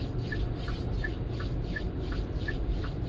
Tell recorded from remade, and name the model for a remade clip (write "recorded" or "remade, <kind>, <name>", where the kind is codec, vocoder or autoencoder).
recorded